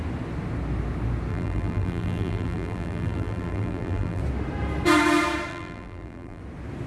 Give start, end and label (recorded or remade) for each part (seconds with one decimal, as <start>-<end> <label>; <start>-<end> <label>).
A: 0.0-1.3 recorded; 1.3-4.2 remade; 4.2-5.5 recorded; 5.5-6.4 remade; 6.4-6.9 recorded